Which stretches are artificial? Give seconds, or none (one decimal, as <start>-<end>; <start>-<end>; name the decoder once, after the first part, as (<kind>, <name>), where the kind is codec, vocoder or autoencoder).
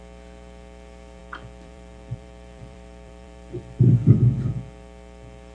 1.2-4.5 (vocoder, BigVGAN v2)